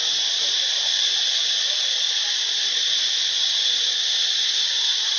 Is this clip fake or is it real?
real